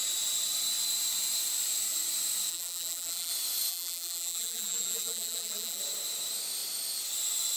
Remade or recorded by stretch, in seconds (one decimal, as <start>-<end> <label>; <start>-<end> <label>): 0.0-2.5 recorded; 2.5-3.3 remade; 3.3-3.7 recorded; 3.7-5.8 remade; 5.8-7.6 recorded